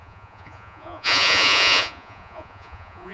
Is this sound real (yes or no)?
no